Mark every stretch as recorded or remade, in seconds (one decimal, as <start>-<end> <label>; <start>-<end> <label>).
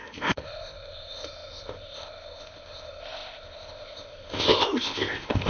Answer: 0.0-5.5 remade